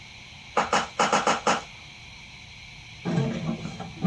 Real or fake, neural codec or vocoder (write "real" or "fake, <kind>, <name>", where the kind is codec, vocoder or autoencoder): real